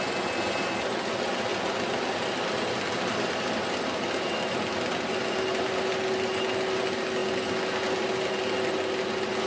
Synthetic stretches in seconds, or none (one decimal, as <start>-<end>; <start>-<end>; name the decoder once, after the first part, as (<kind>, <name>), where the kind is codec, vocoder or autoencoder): none